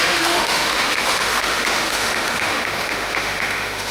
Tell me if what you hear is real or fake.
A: fake